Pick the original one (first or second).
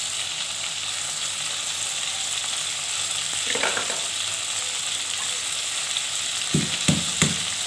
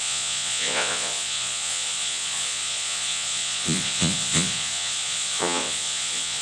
first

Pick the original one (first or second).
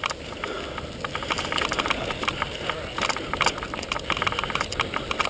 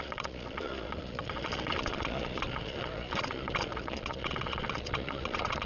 first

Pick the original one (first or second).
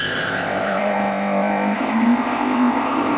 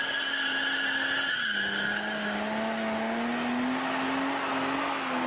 second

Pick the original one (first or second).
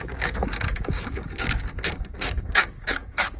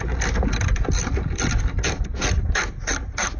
second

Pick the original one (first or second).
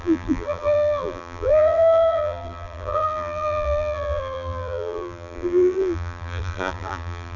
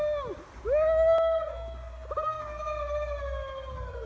second